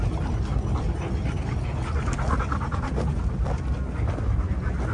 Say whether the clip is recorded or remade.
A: recorded